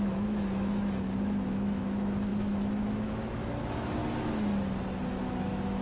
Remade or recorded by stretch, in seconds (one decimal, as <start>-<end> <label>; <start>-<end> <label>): 0.0-4.0 remade; 4.0-5.1 recorded; 5.1-5.8 remade